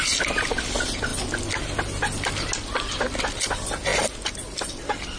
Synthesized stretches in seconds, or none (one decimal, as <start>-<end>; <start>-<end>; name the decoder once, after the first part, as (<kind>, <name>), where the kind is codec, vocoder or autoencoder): none